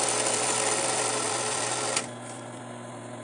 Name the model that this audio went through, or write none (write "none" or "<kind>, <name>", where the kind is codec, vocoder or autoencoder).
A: none